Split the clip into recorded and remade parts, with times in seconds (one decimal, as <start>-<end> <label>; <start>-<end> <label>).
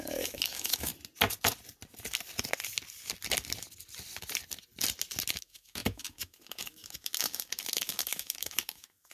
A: 0.0-0.9 remade; 0.9-5.3 recorded; 5.3-9.1 remade